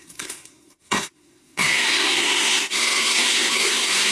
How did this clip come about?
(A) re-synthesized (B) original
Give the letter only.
A